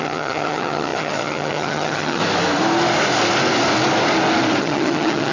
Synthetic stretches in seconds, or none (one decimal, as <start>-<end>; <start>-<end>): 0.0-2.2; 4.6-5.3